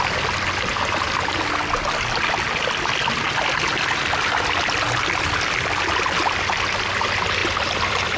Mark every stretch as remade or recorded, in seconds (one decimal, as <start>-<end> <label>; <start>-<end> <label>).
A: 0.0-8.2 recorded